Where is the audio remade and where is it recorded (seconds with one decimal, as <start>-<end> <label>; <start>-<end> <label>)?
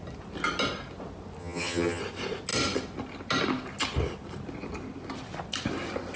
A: 0.0-1.4 recorded; 1.4-2.0 remade; 2.0-6.2 recorded